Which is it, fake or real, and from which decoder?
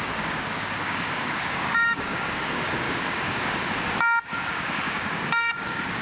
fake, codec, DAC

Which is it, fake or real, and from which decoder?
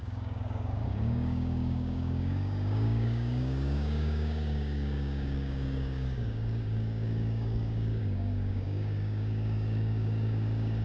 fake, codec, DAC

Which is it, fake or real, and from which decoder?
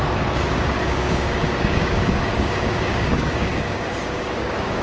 fake, codec, DAC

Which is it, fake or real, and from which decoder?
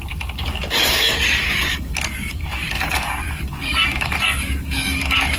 fake, codec, DAC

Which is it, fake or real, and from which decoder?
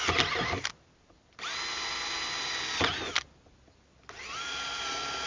real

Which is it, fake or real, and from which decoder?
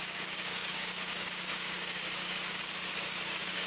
fake, codec, DAC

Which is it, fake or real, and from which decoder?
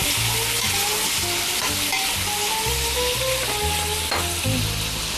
real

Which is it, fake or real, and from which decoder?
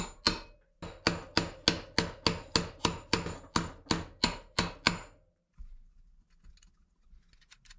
real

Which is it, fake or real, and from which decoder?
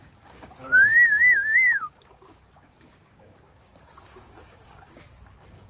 fake, codec, DAC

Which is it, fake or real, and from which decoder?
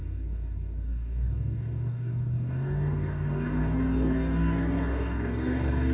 fake, codec, DAC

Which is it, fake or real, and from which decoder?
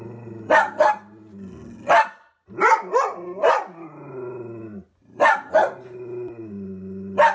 real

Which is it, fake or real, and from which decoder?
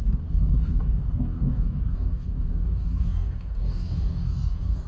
fake, codec, DAC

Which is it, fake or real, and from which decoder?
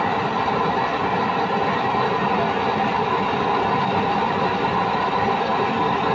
real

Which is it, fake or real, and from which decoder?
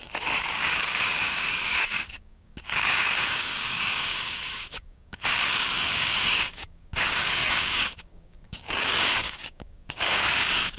fake, codec, DAC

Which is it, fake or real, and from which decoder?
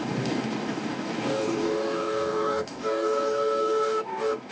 fake, codec, DAC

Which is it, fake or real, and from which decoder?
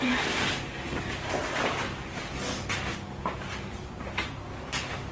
real